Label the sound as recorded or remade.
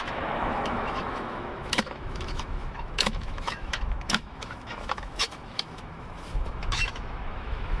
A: remade